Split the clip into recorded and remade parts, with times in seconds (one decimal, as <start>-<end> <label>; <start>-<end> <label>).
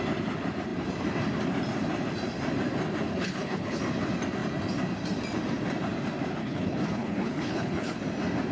0.0-3.1 recorded; 3.1-3.8 remade; 3.8-6.4 recorded; 6.4-8.0 remade; 8.0-8.5 recorded